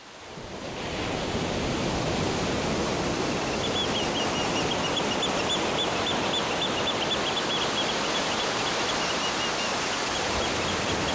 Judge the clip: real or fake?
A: real